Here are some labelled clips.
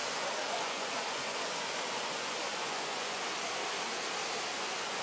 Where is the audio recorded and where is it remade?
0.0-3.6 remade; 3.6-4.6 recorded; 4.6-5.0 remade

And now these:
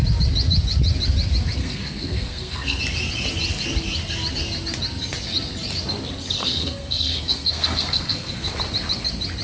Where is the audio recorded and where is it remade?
0.0-1.6 recorded; 1.6-2.8 remade; 2.8-6.4 recorded; 6.4-8.5 remade; 8.5-9.4 recorded

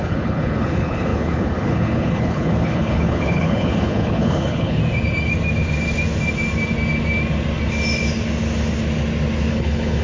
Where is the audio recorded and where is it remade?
0.0-4.8 remade; 4.8-9.5 recorded; 9.5-10.0 remade

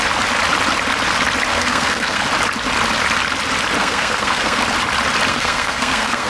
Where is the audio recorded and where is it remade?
0.0-1.5 recorded; 1.5-2.2 remade; 2.2-3.8 recorded; 3.8-4.6 remade; 4.6-5.3 recorded; 5.3-6.3 remade

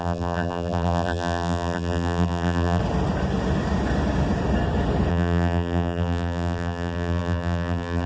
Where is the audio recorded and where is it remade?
0.0-2.8 remade; 2.8-5.1 recorded; 5.1-8.1 remade

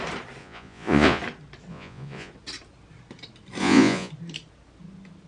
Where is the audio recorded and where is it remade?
0.0-0.4 recorded; 0.4-1.2 remade; 1.2-1.7 recorded; 1.7-2.3 remade; 2.3-3.6 recorded; 3.6-4.1 remade; 4.1-5.3 recorded